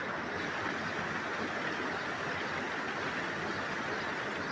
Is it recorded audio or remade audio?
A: recorded